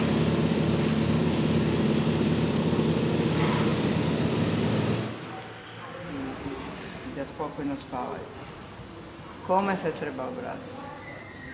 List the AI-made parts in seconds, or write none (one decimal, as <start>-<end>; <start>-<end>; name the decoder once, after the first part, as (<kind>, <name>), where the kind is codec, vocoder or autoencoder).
3.7-4.7 (vocoder, BigVGAN v2)